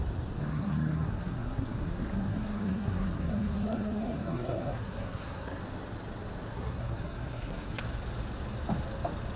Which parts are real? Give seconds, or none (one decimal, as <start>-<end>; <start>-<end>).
0.0-0.5; 5.6-6.5; 7.8-9.4